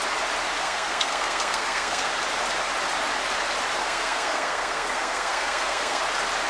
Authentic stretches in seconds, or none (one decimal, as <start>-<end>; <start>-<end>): 0.0-0.6; 2.1-3.8; 6.0-6.5